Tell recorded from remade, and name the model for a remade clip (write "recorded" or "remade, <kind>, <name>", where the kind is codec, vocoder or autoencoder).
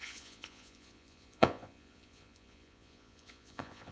remade, vocoder, Vocos